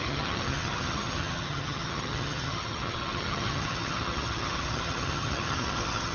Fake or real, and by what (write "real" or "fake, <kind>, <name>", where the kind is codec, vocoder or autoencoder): fake, vocoder, HiFi-GAN